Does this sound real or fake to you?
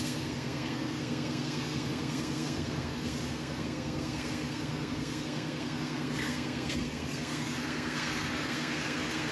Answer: fake